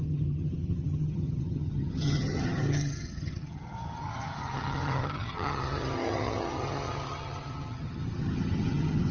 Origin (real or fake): fake